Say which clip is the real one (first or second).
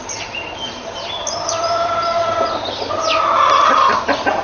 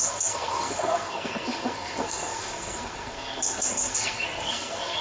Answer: first